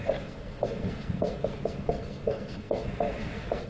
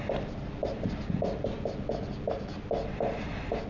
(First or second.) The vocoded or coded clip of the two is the first